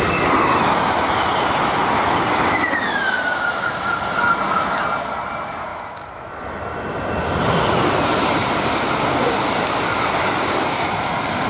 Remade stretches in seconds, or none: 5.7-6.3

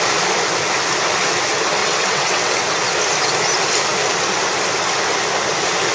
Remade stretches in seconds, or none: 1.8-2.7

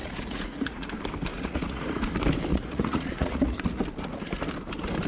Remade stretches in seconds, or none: 0.0-0.9; 1.3-2.0; 2.5-3.8

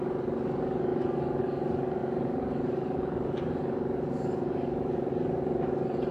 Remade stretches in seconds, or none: 0.0-6.1